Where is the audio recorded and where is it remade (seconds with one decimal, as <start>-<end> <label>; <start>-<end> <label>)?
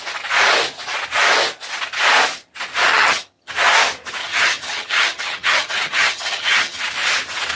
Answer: 0.0-2.9 recorded; 2.9-3.5 remade; 3.5-4.2 recorded; 4.2-6.8 remade; 6.8-7.6 recorded